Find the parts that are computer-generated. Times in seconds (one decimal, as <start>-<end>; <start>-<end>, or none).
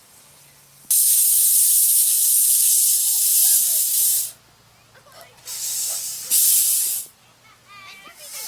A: none